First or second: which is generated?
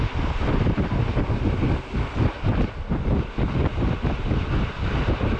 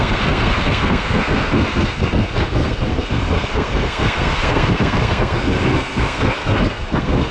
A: second